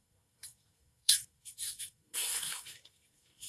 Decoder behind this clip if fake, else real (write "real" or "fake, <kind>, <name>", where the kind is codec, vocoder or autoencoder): fake, codec, SNAC